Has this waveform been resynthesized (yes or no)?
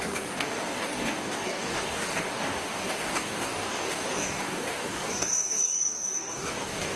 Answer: yes